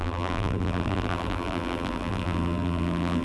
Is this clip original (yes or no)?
no